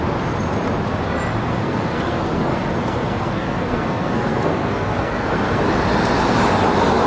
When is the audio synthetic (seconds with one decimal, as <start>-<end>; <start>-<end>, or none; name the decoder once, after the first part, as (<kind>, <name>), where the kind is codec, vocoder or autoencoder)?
1.5-5.6 (codec, SNAC)